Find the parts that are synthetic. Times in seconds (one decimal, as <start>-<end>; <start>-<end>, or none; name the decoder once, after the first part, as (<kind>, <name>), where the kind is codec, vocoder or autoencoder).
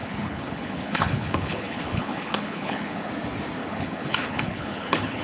0.0-3.1 (codec, HILCodec); 3.6-5.2